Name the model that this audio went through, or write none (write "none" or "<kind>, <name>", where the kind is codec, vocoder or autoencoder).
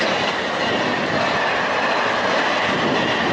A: none